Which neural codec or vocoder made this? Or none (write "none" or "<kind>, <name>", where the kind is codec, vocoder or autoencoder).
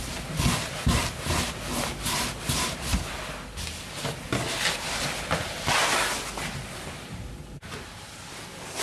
none